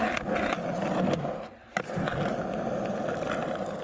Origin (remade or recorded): recorded